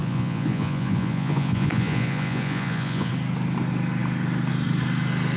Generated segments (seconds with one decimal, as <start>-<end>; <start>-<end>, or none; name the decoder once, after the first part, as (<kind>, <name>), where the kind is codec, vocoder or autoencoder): 0.0-3.1 (vocoder, Vocos)